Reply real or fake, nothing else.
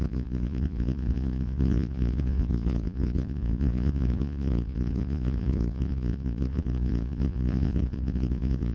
fake